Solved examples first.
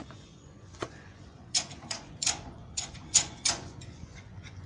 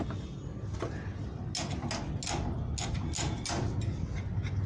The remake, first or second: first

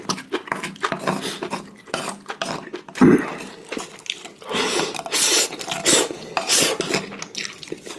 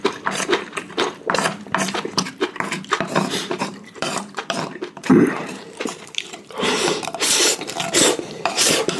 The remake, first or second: second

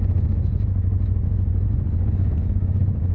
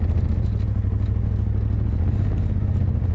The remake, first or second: first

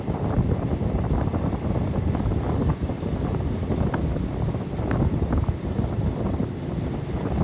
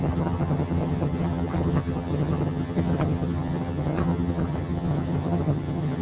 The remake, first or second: second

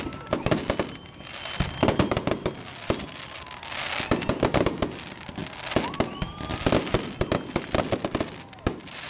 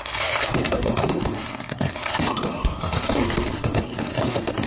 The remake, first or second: second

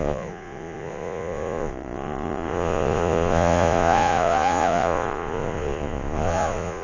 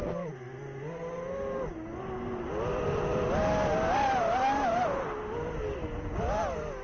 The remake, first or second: first